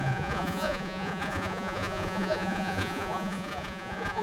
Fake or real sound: fake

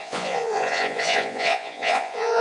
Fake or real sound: fake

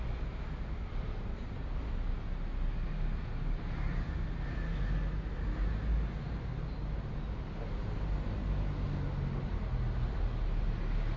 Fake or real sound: real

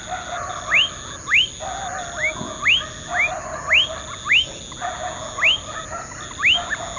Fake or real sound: real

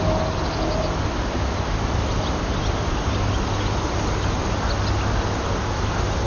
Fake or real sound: real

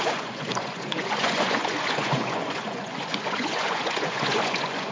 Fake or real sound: fake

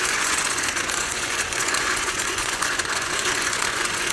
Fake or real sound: fake